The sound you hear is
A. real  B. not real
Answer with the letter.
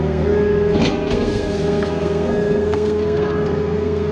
B